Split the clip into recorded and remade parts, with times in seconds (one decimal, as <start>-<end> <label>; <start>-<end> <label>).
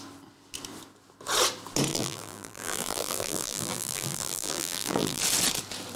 0.0-1.9 recorded; 1.9-5.2 remade; 5.2-6.0 recorded